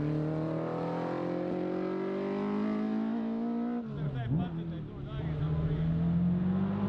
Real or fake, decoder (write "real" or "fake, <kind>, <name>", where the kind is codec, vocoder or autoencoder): real